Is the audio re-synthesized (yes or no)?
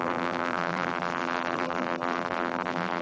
yes